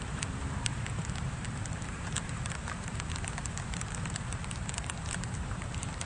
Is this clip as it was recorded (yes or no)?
no